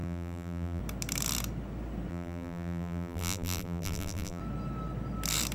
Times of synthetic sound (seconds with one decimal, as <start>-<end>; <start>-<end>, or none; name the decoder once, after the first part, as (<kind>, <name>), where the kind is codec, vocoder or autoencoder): 0.0-0.8 (vocoder, BigVGAN v2); 2.1-4.4